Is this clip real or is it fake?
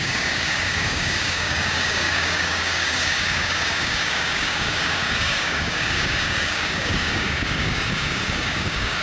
fake